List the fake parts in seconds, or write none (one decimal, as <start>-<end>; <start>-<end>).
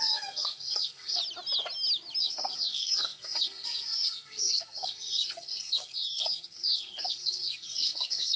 0.0-1.2; 2.2-8.4